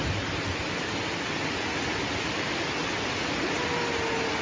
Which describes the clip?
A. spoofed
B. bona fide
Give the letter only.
B